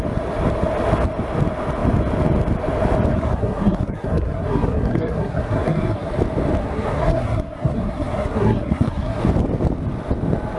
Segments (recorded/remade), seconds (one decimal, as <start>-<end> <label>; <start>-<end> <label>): 0.0-3.1 recorded; 3.1-6.1 remade; 6.1-6.6 recorded; 6.6-9.2 remade; 9.2-10.6 recorded